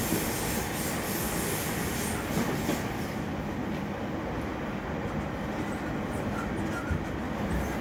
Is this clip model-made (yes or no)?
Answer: no